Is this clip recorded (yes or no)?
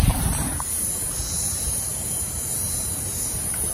no